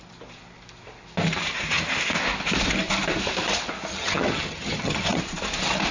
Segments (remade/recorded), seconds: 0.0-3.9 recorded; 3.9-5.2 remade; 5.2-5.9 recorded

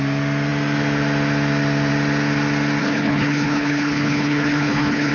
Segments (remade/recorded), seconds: 0.0-2.8 recorded; 2.8-5.1 remade